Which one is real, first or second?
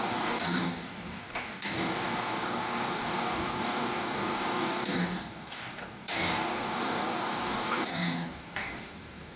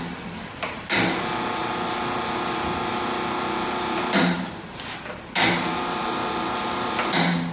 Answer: second